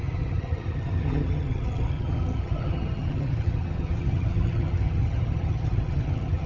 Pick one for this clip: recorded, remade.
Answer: remade